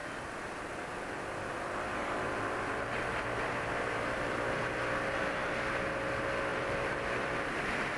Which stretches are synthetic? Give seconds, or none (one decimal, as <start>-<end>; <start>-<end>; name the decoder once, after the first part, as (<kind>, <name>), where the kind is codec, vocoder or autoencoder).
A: 2.0-3.7 (vocoder, BigVGAN v2); 6.5-7.5